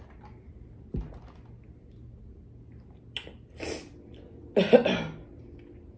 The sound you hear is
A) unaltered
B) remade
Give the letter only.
A